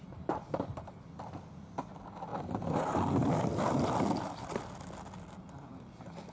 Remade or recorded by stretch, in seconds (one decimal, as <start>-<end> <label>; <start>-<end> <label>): 0.0-6.3 recorded